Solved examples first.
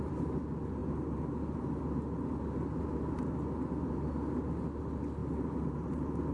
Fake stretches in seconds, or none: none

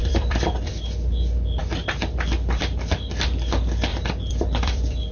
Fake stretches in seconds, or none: 0.0-0.7 (vocoder, BigVGAN v2); 3.9-5.1